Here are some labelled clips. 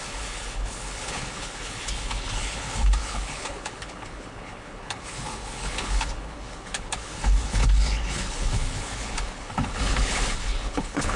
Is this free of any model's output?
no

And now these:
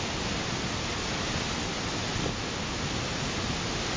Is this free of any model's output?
yes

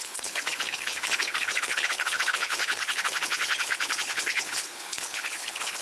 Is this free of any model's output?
no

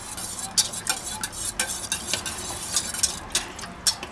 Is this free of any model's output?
yes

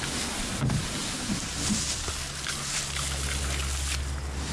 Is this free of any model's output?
yes